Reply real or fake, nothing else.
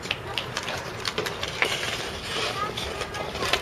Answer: fake